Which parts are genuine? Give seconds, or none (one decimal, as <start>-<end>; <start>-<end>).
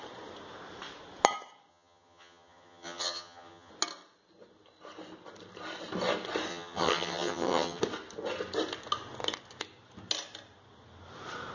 0.0-1.7; 3.7-6.5; 7.8-11.5